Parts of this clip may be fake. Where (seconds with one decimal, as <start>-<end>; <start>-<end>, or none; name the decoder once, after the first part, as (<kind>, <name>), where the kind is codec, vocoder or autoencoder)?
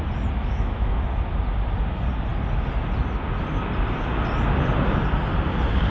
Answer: 0.4-1.0 (autoencoder, DAC-VAE)